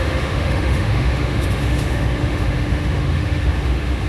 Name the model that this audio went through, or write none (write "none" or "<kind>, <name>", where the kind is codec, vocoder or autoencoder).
autoencoder, DAC-VAE